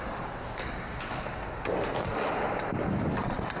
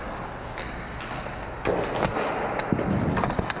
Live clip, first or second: second